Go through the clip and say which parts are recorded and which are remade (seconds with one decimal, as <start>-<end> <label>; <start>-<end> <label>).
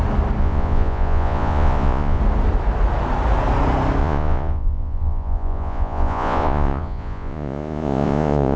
0.0-0.4 recorded; 0.4-2.2 remade; 2.2-4.0 recorded; 4.0-8.6 remade